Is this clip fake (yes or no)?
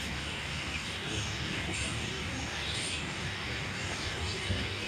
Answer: yes